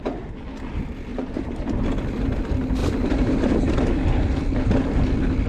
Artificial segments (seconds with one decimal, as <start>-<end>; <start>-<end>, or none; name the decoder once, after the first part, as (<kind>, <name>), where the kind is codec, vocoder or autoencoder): 1.1-1.8 (vocoder, BigVGAN v2); 2.8-3.7